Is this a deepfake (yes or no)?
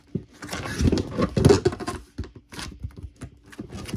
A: no